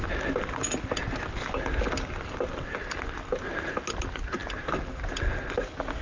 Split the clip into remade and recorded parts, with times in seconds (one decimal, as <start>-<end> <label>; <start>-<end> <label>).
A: 0.0-6.0 recorded

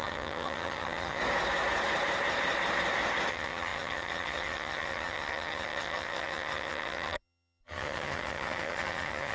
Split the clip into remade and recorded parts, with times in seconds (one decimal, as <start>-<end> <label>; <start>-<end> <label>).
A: 0.0-1.2 remade; 1.2-3.3 recorded; 3.3-9.3 remade